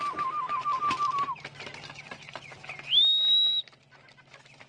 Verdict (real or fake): real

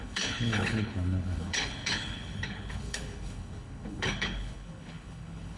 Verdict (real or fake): fake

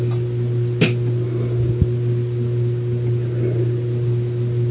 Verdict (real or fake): real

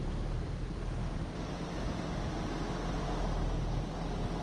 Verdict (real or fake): real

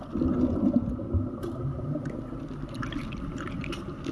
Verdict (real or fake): real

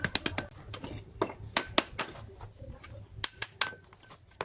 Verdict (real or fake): real